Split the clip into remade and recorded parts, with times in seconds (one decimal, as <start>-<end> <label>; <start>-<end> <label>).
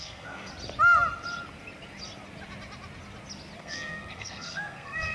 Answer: 0.0-0.5 remade; 0.5-3.6 recorded; 3.6-5.1 remade